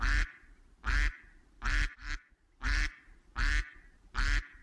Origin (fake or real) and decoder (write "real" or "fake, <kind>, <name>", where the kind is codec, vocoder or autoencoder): real